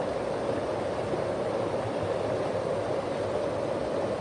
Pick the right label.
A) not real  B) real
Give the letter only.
B